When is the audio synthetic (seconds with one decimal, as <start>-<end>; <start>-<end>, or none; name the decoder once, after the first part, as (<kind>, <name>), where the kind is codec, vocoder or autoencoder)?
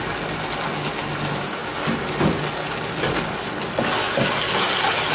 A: none